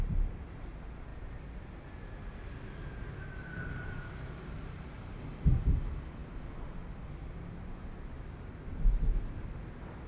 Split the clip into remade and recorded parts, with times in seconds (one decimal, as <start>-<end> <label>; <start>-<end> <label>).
0.0-10.1 recorded